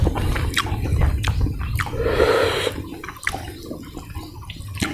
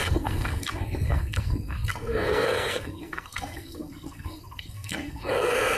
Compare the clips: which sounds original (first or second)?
first